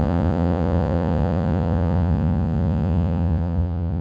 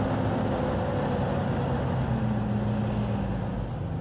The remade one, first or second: first